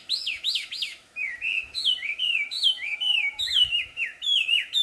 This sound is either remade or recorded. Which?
remade